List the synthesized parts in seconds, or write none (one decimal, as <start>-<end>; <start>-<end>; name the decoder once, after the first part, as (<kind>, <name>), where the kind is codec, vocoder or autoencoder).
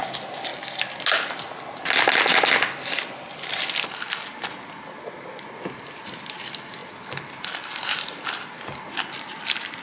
none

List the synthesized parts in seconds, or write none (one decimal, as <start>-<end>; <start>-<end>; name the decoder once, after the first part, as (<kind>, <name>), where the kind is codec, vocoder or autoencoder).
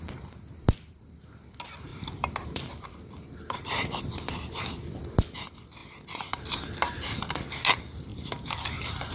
1.9-4.0 (vocoder, BigVGAN v2); 8.1-9.1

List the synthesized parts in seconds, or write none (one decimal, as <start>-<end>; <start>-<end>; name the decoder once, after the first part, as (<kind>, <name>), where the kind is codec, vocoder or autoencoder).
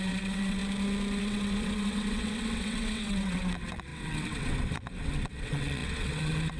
0.0-0.6 (vocoder, WaveNeXt); 1.2-6.6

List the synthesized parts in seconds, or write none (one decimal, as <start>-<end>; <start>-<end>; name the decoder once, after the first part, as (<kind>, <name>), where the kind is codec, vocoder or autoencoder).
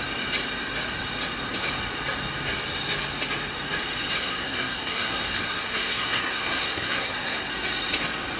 4.2-7.5 (codec, SNAC)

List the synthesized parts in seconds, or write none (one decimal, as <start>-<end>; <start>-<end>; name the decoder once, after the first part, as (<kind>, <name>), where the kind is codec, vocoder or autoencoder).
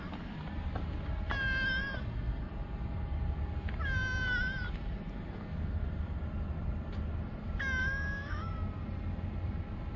7.8-8.5 (autoencoder, DAC-VAE)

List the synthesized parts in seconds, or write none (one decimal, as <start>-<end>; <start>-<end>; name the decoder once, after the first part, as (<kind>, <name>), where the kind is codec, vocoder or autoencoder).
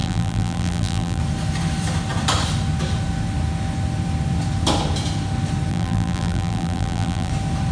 0.0-1.2 (vocoder, BigVGAN v2); 5.7-7.3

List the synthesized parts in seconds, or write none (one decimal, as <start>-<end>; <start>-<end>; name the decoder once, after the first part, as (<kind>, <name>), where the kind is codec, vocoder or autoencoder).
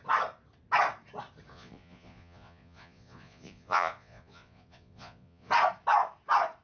1.5-5.5 (vocoder, Vocos)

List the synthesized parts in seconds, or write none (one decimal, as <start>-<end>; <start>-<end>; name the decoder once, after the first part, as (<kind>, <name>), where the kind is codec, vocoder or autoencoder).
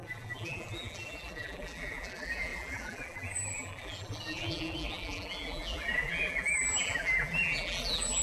0.0-8.2 (vocoder, BigVGAN v2)